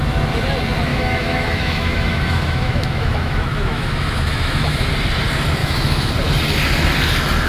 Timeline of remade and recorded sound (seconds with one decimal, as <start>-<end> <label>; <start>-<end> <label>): 0.0-0.9 recorded; 0.9-4.9 remade; 4.9-5.6 recorded; 5.6-6.1 remade; 6.1-7.5 recorded